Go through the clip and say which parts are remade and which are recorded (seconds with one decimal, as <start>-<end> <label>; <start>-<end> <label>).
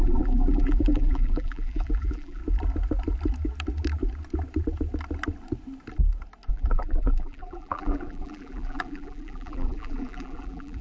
0.0-2.4 remade; 2.4-6.5 recorded; 6.5-10.8 remade